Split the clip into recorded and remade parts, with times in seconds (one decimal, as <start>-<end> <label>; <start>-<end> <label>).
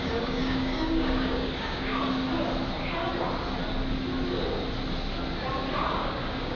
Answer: 0.0-2.0 remade; 2.0-5.9 recorded; 5.9-6.5 remade